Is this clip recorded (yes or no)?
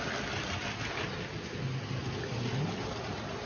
yes